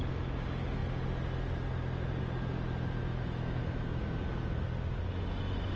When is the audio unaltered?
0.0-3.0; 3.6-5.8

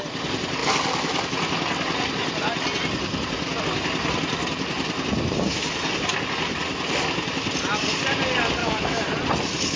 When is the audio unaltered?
0.0-8.6; 9.1-9.8

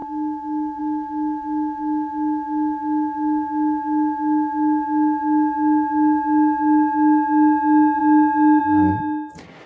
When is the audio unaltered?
0.8-8.0; 8.6-9.7

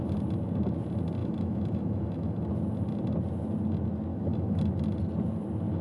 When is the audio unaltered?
0.0-1.2; 2.5-4.1; 4.6-5.8

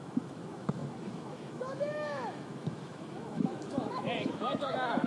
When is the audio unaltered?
none

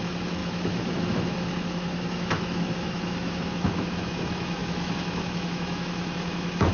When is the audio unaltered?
none

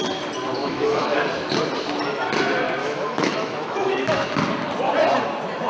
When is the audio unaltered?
0.0-0.6; 1.2-2.8; 4.3-5.7

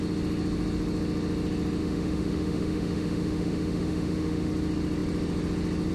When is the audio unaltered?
0.0-1.8; 4.5-5.9